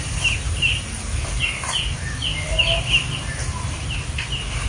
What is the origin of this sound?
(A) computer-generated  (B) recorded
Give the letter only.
B